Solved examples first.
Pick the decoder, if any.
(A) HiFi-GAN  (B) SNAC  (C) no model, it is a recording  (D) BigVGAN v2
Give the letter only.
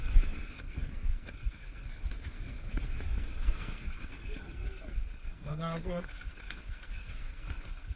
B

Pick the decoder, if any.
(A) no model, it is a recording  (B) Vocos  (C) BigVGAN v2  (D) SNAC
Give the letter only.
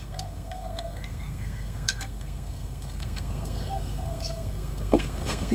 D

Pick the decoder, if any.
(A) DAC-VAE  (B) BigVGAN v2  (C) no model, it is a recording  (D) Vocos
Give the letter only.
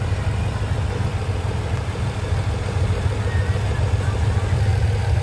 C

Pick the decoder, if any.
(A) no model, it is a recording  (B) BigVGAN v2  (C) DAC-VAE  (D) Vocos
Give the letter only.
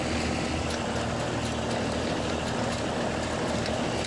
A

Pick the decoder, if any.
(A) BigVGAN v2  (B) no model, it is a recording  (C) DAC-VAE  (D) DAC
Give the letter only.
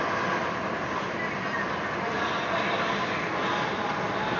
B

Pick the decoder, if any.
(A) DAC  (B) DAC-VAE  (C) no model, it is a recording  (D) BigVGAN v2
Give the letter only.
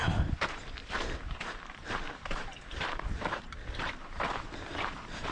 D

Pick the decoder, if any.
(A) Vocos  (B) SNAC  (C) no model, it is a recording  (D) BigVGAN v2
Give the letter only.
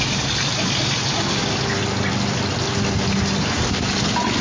C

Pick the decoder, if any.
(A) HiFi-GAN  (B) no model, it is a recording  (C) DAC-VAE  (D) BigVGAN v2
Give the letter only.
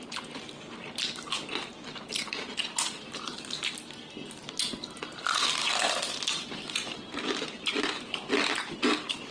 B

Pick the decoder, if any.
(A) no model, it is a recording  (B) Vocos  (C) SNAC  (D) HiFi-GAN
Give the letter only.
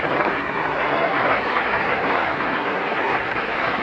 C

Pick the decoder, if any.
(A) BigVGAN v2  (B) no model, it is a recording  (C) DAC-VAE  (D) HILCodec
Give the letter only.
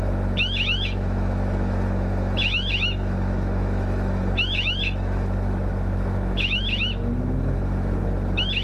C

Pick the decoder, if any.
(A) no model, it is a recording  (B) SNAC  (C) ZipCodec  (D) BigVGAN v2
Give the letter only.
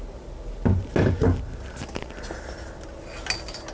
A